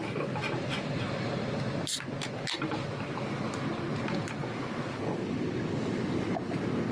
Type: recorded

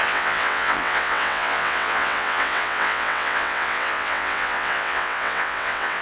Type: remade